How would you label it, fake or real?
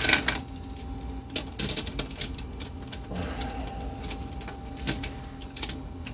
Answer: real